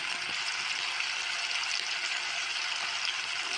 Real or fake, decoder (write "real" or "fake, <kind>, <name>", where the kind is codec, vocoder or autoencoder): real